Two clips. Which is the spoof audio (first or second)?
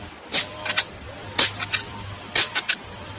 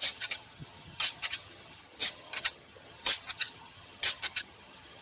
second